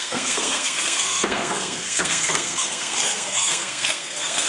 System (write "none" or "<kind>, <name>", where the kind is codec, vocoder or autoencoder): codec, SNAC